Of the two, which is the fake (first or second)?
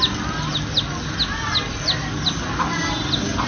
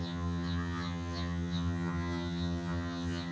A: second